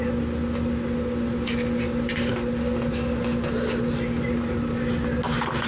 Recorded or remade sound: recorded